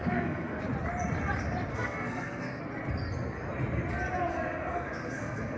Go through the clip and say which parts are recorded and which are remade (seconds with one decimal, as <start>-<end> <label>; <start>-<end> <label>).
0.0-0.6 remade; 0.6-1.7 recorded; 1.7-2.6 remade; 2.6-4.3 recorded; 4.3-5.6 remade